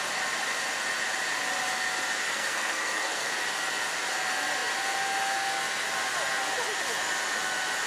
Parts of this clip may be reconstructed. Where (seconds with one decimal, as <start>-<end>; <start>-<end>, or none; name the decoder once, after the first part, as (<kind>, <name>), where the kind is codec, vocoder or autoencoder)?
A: 2.3-3.3 (codec, SNAC)